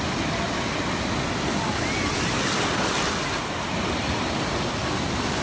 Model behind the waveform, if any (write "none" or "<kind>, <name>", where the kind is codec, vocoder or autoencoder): none